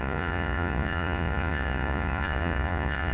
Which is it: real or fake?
fake